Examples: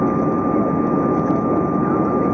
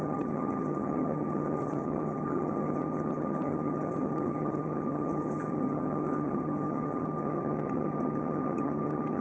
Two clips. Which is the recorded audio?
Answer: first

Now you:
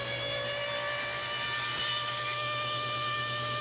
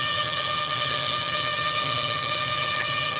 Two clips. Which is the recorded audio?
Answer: first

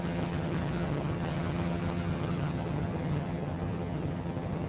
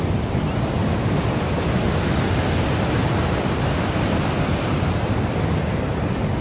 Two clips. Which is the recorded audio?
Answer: second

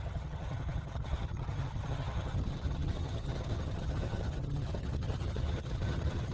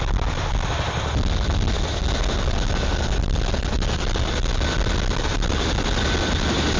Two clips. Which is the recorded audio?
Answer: second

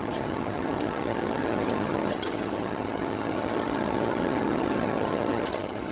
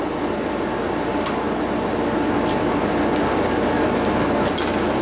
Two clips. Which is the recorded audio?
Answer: second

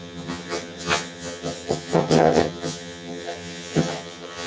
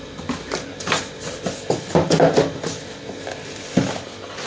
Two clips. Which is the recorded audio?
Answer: second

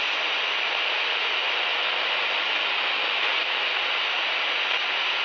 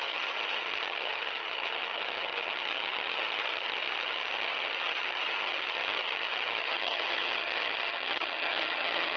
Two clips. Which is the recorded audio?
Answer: first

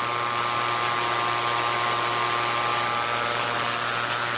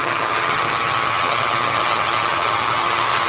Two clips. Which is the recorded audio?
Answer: first